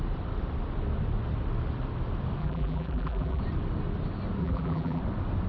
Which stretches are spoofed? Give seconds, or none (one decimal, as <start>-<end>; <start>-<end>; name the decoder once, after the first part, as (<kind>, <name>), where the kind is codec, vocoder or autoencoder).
2.4-3.4 (vocoder, BigVGAN v2); 4.4-5.0